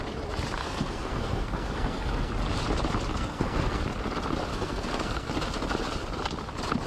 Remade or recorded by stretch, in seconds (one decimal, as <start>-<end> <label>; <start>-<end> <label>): 0.0-0.6 recorded; 0.6-2.3 remade; 2.3-3.1 recorded; 3.1-3.8 remade; 3.8-4.5 recorded; 4.5-5.3 remade; 5.3-6.9 recorded